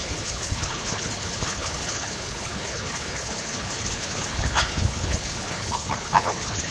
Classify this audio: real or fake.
fake